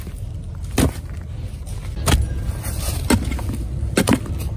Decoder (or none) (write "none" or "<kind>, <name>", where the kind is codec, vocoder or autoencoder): none